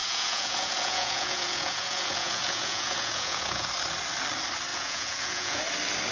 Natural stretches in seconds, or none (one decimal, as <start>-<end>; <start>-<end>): 3.7-4.7; 5.6-6.1